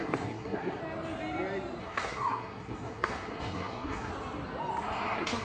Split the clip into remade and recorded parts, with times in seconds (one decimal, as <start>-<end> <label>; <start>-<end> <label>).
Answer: 0.0-0.8 remade; 0.8-1.8 recorded; 1.8-4.1 remade; 4.1-4.8 recorded; 4.8-5.4 remade